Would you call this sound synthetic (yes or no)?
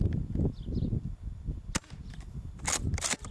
no